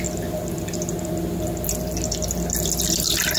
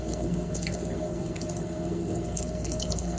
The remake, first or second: second